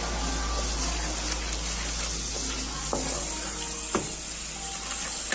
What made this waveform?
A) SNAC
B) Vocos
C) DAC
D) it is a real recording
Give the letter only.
D